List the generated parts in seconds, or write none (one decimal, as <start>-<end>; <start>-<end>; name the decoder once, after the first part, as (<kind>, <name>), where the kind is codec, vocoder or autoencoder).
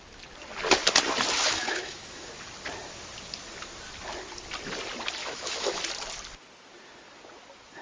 1.4-2.3 (autoencoder, DAC-VAE); 5.2-5.8